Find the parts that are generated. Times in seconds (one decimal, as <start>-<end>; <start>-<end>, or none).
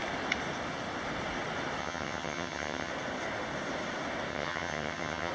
1.8-2.9; 4.3-5.3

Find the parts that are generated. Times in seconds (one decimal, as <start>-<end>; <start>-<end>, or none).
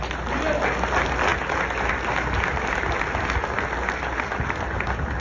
none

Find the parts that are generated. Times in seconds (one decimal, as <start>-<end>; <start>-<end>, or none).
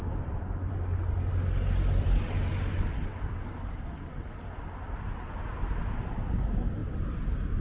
none